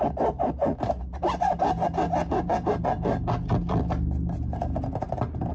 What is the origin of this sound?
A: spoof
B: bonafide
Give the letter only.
B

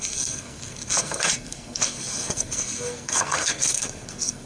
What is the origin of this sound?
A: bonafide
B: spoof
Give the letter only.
B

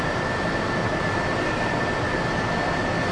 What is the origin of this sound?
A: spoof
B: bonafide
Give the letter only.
B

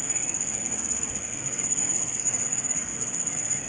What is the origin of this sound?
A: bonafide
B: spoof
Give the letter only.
B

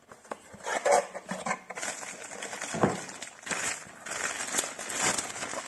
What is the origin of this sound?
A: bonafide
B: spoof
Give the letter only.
A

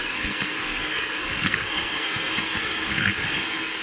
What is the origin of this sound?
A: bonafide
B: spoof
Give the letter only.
B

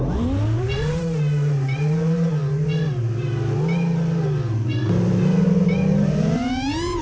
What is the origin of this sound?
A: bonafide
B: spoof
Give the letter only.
A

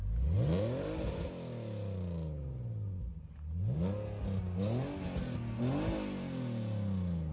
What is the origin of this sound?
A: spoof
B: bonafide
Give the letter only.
B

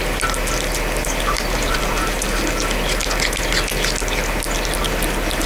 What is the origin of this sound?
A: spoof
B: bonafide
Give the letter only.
B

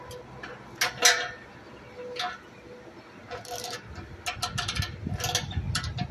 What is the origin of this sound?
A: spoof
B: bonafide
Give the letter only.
B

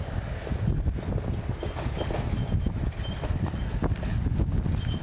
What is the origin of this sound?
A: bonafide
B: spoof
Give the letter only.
A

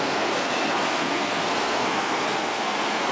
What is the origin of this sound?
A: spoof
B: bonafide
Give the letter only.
A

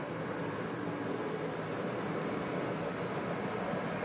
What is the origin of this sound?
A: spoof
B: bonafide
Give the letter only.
B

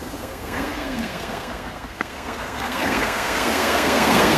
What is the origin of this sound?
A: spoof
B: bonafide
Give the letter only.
A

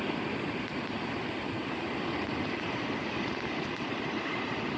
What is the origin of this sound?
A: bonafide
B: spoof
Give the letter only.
A